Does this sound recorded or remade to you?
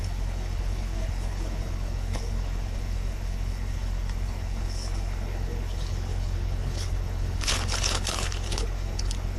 remade